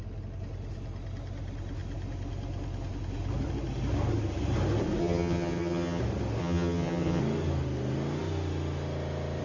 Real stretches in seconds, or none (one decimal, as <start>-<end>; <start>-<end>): 0.0-5.0; 6.0-6.4; 7.2-9.4